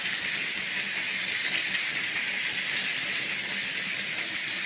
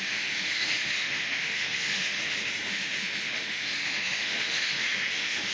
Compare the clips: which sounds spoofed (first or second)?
second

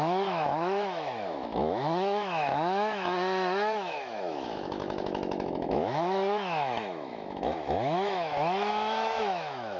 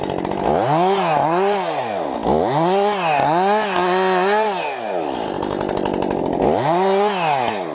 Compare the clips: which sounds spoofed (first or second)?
first